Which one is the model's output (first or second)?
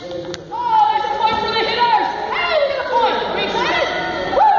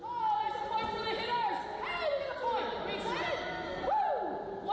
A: first